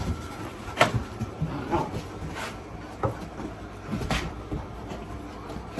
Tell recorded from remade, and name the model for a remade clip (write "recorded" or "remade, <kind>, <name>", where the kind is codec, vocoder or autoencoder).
remade, vocoder, BigVGAN v2